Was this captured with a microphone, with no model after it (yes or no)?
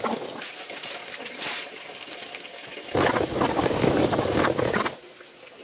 yes